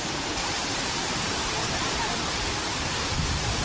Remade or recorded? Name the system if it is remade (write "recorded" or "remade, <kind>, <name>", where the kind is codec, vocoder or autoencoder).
remade, vocoder, BigVGAN v2